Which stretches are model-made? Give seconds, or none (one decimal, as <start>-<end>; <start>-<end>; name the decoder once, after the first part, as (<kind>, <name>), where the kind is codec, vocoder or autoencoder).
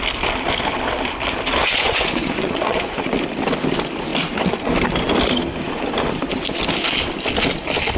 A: 1.6-3.1 (vocoder, Vocos)